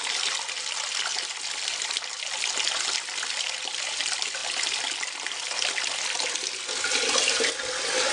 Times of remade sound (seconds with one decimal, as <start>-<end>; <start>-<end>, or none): none